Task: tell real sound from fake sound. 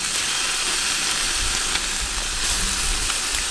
real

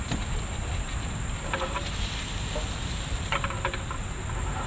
real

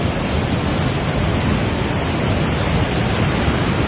real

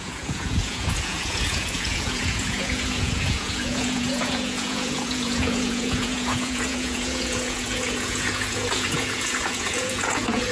fake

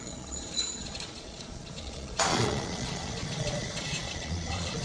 fake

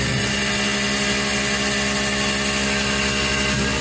real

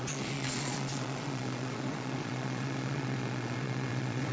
fake